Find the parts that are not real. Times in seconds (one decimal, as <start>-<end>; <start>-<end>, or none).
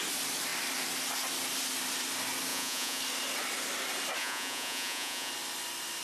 2.5-3.0; 4.2-5.3